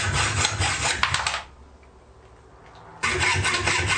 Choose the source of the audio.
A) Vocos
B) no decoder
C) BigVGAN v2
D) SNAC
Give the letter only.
B